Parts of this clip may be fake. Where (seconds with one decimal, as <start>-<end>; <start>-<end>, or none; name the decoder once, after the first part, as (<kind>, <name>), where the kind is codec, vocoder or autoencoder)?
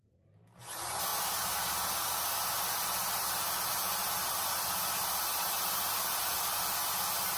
1.1-2.1 (vocoder, BigVGAN v2)